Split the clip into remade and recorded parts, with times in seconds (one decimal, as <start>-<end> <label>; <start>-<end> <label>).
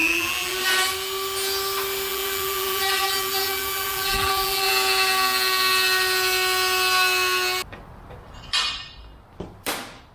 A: 0.0-0.6 remade; 0.6-2.1 recorded; 2.1-4.7 remade; 4.7-10.1 recorded